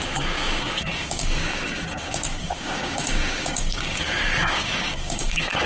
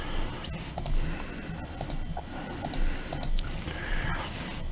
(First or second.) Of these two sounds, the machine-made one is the first